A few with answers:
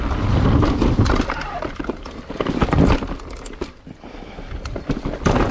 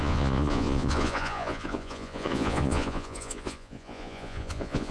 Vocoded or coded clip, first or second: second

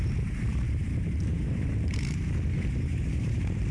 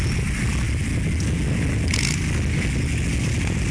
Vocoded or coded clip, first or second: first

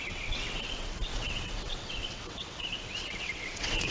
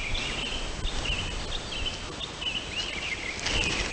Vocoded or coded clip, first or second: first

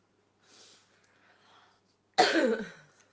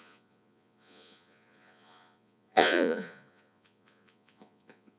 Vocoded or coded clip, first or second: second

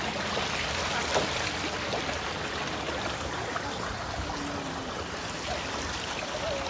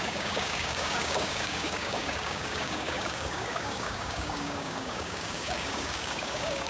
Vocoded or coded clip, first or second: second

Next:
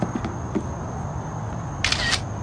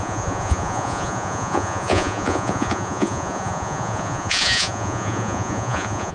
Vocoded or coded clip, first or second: second